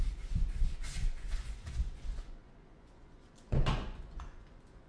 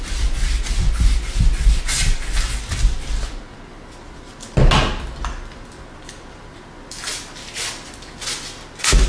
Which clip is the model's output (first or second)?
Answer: first